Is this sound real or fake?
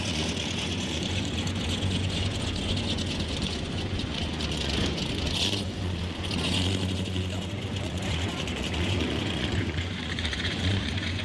fake